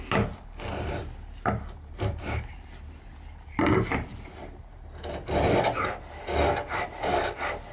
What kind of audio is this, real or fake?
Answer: real